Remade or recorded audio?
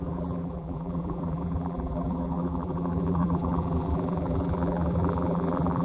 remade